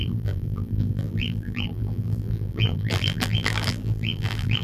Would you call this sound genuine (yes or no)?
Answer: no